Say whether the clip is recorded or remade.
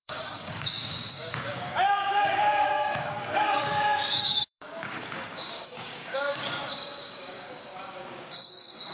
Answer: remade